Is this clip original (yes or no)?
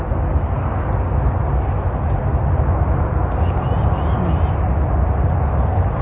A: yes